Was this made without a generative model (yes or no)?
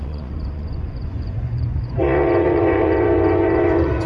no